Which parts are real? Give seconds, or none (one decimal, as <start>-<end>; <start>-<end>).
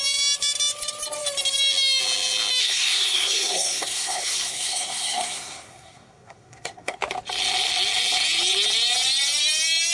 0.0-2.6; 7.0-9.9